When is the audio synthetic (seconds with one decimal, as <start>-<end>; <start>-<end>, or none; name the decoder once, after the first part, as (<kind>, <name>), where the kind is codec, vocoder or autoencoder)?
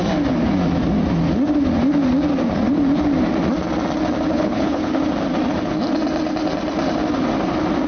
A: 4.3-5.0 (codec, HILCodec)